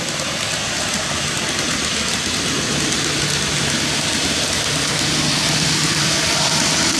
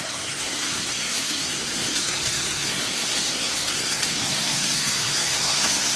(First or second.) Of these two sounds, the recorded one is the first